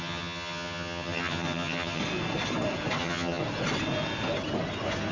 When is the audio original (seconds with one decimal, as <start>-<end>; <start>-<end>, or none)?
2.0-3.0; 3.4-5.1